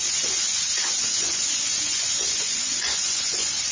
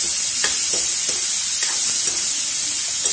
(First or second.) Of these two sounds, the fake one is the first